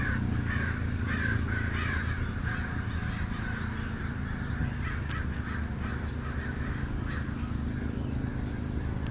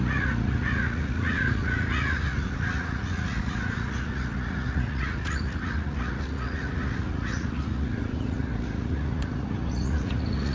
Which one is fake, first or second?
second